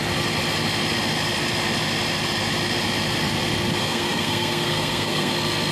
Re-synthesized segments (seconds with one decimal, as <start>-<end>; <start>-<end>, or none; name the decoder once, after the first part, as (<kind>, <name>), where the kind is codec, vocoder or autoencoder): 3.8-5.3 (codec, SNAC)